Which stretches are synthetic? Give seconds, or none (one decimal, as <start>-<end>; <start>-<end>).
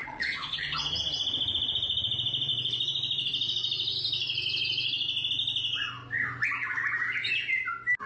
0.0-0.8